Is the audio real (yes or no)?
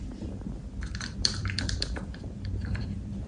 no